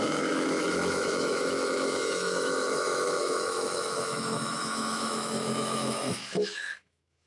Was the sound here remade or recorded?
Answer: remade